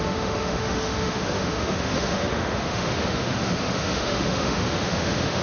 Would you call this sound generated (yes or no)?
yes